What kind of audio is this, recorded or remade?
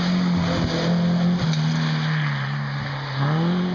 recorded